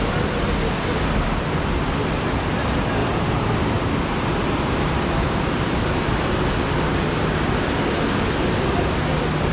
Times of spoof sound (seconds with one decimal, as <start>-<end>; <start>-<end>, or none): 3.0-6.5